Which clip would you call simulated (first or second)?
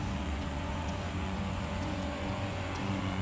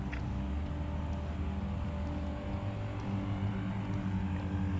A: first